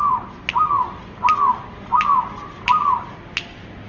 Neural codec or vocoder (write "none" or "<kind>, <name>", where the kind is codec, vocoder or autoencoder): none